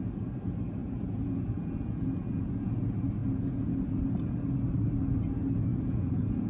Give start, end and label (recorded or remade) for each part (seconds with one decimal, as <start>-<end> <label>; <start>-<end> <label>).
0.0-0.8 recorded; 0.8-2.7 remade; 2.7-3.2 recorded; 3.2-3.9 remade; 3.9-5.7 recorded; 5.7-6.5 remade